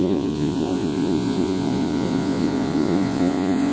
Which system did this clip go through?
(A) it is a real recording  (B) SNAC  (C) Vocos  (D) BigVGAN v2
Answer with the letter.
C